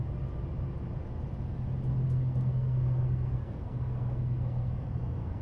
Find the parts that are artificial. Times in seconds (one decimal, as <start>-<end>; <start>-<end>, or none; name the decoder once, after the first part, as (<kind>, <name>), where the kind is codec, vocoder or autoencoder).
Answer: 2.0-5.4 (codec, SNAC)